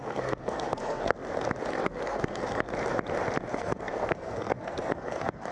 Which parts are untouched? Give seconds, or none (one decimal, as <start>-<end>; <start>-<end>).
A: 1.2-1.7; 2.7-3.5